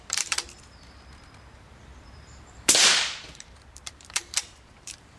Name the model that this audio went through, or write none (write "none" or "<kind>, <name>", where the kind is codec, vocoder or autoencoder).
vocoder, BigVGAN v2